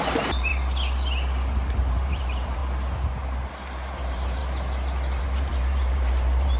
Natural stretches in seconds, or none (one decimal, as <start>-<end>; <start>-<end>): 0.5-1.9; 2.6-3.5; 4.4-5.2